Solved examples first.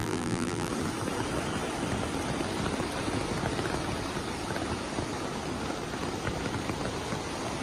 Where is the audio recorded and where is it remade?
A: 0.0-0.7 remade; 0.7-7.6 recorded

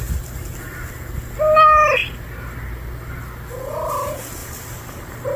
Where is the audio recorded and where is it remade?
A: 0.0-4.4 recorded; 4.4-5.4 remade

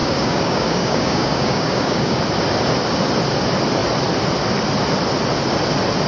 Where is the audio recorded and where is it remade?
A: 0.0-2.2 remade; 2.2-6.1 recorded

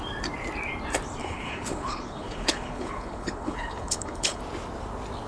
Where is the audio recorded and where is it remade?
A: 0.0-1.2 recorded; 1.2-4.4 remade; 4.4-5.3 recorded